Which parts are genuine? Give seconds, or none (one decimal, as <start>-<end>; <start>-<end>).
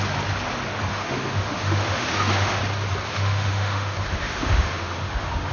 0.0-0.9; 2.6-3.1